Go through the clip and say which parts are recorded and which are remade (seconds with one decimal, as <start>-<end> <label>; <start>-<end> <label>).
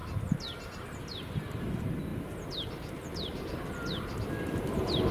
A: 0.0-5.1 recorded